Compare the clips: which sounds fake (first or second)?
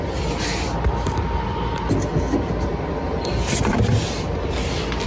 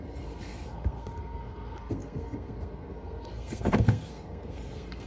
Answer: second